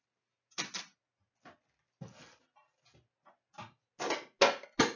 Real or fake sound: real